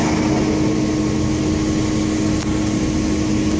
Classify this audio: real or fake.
real